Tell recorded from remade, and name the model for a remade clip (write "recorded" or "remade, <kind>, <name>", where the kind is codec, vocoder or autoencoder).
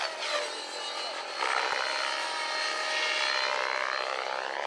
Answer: recorded